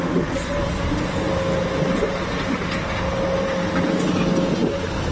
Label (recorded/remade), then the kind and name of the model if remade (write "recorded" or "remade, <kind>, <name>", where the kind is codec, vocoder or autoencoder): recorded